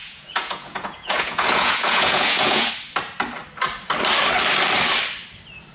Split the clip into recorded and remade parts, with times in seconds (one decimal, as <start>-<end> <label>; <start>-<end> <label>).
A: 0.0-2.7 remade; 2.7-5.7 recorded

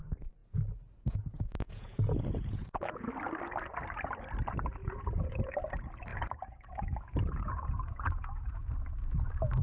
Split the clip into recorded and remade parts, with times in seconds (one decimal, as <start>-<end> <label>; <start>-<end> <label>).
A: 0.0-0.4 recorded; 0.4-3.1 remade; 3.1-4.8 recorded; 4.8-5.5 remade; 5.5-6.1 recorded; 6.1-8.7 remade; 8.7-9.6 recorded

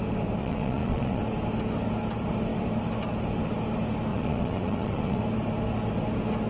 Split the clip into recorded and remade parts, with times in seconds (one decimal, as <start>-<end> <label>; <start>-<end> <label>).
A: 0.0-0.4 recorded; 0.4-1.2 remade; 1.2-4.1 recorded; 4.1-5.2 remade; 5.2-6.5 recorded

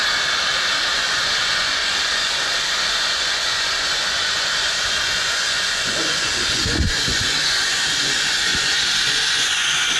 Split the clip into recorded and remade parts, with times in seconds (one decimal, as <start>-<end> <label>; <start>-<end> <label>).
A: 0.0-0.8 recorded; 0.8-10.0 remade

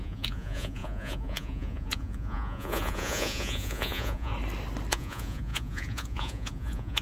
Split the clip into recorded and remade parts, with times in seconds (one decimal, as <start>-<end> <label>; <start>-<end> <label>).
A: 0.0-4.3 remade; 4.3-4.9 recorded; 4.9-7.0 remade

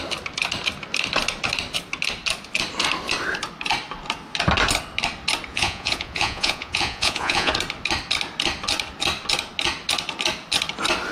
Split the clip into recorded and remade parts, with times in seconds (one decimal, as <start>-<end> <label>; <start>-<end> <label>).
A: 0.0-5.5 recorded; 5.5-7.5 remade; 7.5-11.1 recorded